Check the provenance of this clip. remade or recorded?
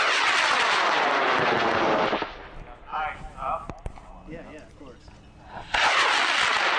recorded